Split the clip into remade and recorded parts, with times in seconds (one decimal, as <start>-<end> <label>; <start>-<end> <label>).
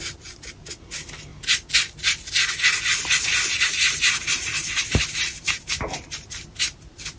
0.0-1.3 remade; 1.3-3.2 recorded; 3.2-7.2 remade